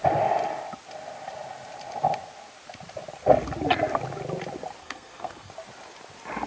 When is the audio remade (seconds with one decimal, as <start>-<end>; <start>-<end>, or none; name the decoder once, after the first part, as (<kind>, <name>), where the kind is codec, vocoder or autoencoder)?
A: 4.8-5.5 (codec, SNAC)